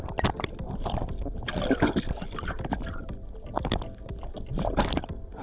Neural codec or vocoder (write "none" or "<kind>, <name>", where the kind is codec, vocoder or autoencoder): none